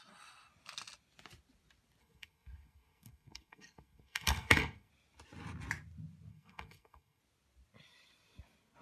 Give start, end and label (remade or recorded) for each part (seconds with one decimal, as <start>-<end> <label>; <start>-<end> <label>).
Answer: 0.0-2.0 recorded; 2.0-4.9 remade; 4.9-6.3 recorded; 6.3-7.2 remade; 7.2-8.8 recorded

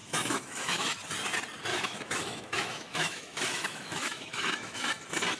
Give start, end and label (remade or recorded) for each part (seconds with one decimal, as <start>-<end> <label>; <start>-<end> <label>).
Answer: 0.0-1.0 remade; 1.0-1.7 recorded; 1.7-4.9 remade; 4.9-5.4 recorded

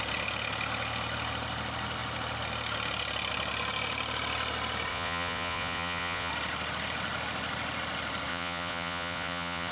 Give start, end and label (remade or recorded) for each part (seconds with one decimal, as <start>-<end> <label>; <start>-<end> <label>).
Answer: 0.0-4.9 recorded; 4.9-6.3 remade; 6.3-8.3 recorded; 8.3-9.7 remade